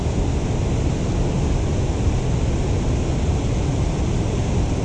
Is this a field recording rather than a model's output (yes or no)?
yes